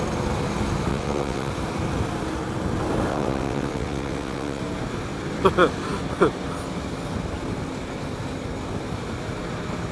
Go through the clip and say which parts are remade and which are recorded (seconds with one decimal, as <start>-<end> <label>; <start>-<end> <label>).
0.0-0.9 recorded; 0.9-1.5 remade; 1.5-3.1 recorded; 3.1-4.6 remade; 4.6-9.9 recorded